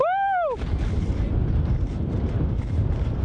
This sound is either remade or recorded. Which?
recorded